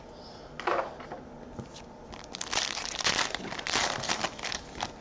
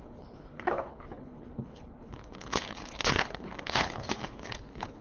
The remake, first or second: second